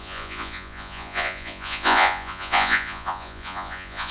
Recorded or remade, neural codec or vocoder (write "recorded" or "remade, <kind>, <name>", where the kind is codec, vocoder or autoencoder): remade, vocoder, Vocos